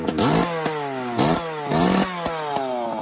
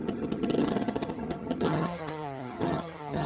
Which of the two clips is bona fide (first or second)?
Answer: first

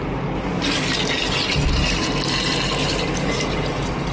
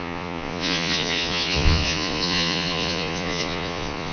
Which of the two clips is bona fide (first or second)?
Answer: first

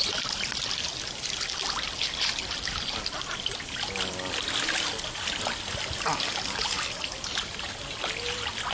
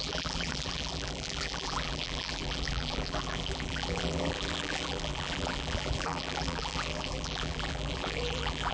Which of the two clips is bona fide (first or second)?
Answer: first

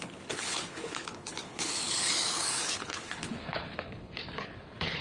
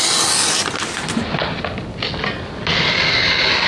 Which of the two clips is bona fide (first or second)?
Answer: second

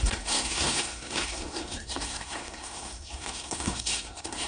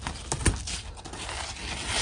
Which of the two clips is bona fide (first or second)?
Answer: second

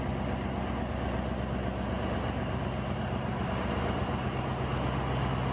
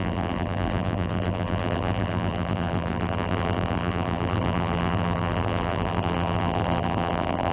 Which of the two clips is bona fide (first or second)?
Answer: first